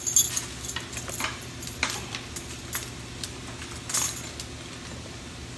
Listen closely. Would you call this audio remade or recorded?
recorded